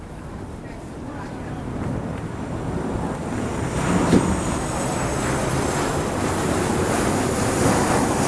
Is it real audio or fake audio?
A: fake